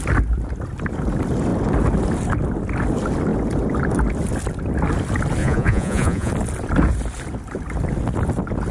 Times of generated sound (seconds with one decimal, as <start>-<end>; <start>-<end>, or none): 5.4-6.3